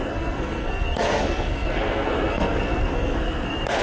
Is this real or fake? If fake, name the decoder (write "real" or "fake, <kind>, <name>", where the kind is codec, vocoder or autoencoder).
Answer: fake, codec, SNAC